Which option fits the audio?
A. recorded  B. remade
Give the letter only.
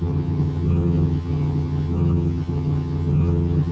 B